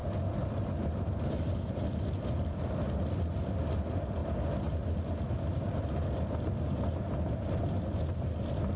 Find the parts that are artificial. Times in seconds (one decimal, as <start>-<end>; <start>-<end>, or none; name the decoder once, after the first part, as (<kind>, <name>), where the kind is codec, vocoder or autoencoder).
none